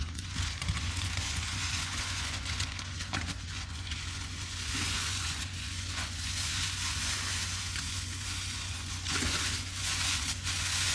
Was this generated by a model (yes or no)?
yes